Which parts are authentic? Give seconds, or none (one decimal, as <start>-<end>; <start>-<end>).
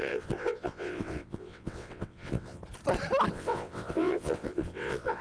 2.6-3.3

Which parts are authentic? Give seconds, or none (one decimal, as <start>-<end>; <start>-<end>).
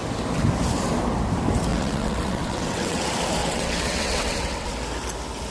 0.0-1.7; 3.0-3.4; 4.7-5.5